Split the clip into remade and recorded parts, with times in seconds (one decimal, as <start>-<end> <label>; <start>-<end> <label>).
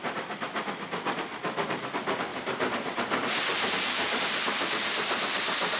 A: 0.0-2.3 recorded; 2.3-4.2 remade; 4.2-5.8 recorded